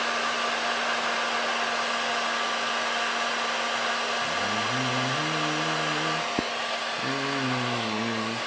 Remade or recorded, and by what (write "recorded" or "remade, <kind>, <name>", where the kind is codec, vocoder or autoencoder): recorded